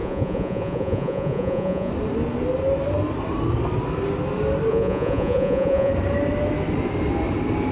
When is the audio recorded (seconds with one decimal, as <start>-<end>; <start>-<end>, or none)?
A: 1.9-4.7; 5.9-7.7